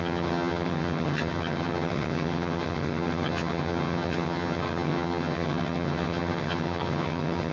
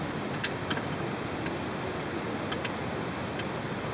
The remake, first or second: first